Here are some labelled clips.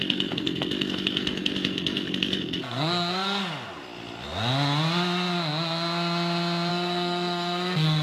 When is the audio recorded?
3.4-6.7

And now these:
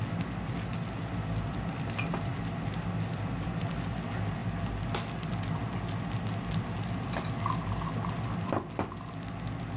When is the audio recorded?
0.0-9.8

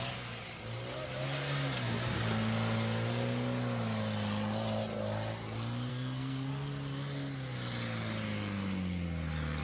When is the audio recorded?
0.0-5.9; 6.5-9.6

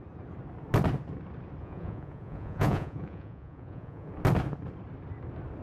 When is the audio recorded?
0.0-1.6; 4.1-5.6